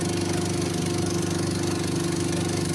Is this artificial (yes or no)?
no